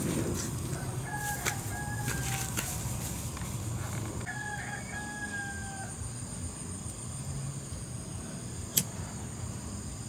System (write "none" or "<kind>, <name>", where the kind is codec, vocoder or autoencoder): none